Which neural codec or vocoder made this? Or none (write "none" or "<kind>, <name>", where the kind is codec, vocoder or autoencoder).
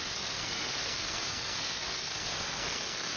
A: codec, SNAC